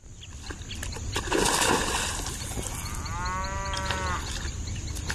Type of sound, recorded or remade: recorded